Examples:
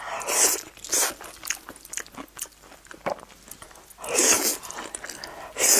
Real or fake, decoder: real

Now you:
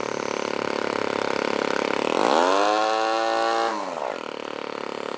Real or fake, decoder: real